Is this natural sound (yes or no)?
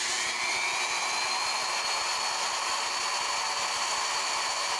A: yes